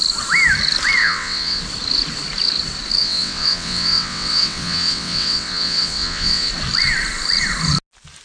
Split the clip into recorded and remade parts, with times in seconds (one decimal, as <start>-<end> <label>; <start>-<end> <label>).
0.0-1.0 recorded; 1.0-1.6 remade; 1.6-3.0 recorded; 3.0-6.5 remade; 6.5-8.2 recorded